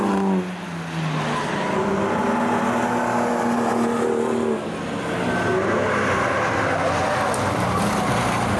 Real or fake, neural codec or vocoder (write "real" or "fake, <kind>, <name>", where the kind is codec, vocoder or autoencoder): real